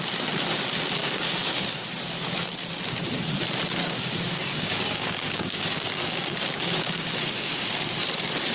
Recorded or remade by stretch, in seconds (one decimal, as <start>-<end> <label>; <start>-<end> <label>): 0.0-1.0 recorded; 1.0-1.7 remade; 1.7-3.8 recorded; 3.8-7.9 remade; 7.9-8.5 recorded